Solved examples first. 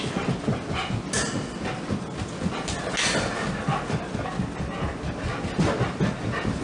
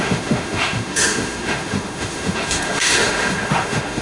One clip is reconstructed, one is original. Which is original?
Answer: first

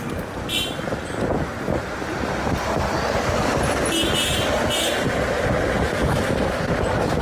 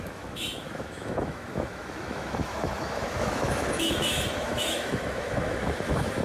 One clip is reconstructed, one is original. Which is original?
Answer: first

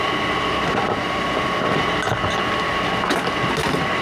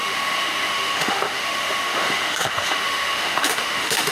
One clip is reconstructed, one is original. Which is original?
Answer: first